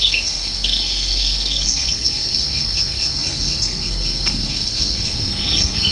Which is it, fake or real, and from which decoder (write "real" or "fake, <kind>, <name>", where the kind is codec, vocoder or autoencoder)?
fake, codec, SNAC